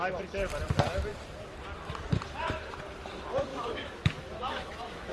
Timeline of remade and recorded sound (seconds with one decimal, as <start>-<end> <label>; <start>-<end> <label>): 0.0-3.5 recorded; 3.5-5.1 remade